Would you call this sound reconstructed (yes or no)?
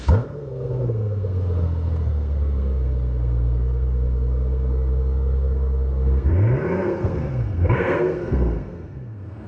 yes